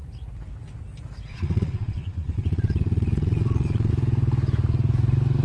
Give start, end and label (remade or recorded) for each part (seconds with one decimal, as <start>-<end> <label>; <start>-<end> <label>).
0.0-1.3 recorded; 1.3-3.9 remade; 3.9-5.4 recorded